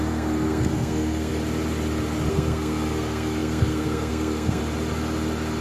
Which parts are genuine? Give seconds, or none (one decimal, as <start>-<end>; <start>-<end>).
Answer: 1.3-2.3; 4.6-5.6